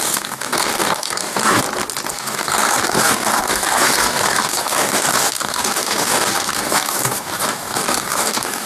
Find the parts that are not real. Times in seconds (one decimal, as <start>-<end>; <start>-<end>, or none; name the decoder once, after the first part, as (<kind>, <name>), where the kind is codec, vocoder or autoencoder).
0.0-1.6 (codec, DAC); 2.1-8.7